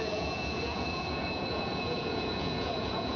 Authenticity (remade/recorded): remade